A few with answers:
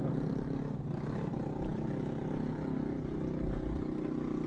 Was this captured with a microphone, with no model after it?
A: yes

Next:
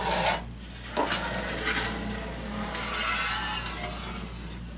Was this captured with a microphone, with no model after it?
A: yes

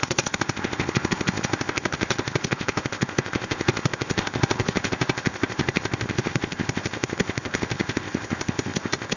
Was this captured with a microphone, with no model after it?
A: no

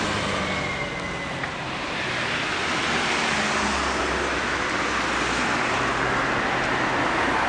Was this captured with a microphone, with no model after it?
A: yes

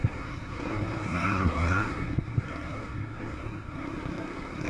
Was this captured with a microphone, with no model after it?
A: no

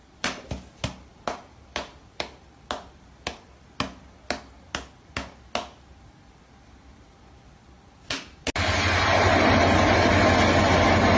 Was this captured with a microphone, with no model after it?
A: yes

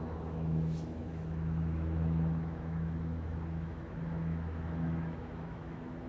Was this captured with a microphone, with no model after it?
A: no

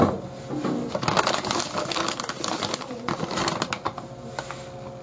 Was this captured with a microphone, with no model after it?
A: yes